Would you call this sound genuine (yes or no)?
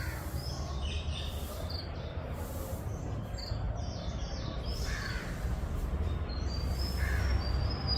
yes